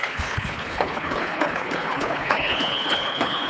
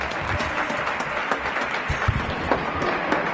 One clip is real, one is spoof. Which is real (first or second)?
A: second